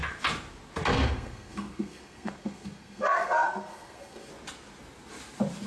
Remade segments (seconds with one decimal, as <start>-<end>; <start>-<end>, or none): 0.9-4.3